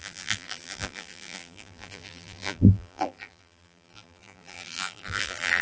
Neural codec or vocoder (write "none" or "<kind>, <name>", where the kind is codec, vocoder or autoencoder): vocoder, BigVGAN v2